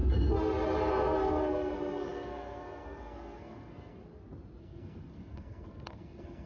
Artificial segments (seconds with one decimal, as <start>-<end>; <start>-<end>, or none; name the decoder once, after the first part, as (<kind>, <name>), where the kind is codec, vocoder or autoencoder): 0.9-4.0 (codec, SNAC); 4.6-6.5